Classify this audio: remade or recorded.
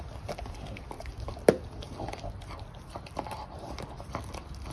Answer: recorded